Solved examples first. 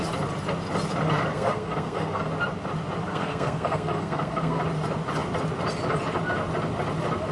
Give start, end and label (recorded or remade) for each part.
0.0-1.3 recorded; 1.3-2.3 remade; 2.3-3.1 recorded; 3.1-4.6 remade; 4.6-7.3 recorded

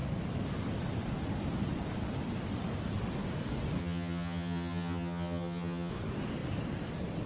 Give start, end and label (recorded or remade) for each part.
0.0-3.8 recorded; 3.8-5.9 remade; 5.9-7.3 recorded